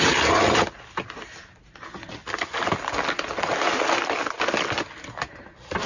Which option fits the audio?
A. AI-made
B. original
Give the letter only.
B